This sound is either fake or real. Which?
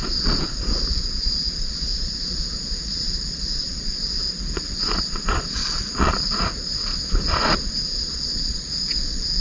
fake